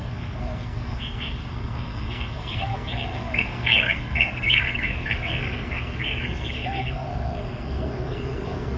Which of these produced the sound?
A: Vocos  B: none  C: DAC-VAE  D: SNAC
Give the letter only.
D